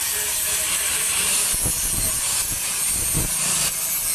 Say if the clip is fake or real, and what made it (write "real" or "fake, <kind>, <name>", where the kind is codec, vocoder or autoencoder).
real